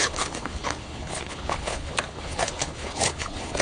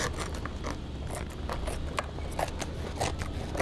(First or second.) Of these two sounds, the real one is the second